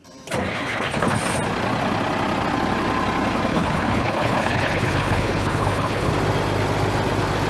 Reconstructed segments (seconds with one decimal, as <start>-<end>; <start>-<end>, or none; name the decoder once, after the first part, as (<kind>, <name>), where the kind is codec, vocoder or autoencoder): 0.5-1.2 (codec, HILCodec); 3.5-6.1